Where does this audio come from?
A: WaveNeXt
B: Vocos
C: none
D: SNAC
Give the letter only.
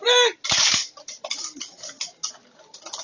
C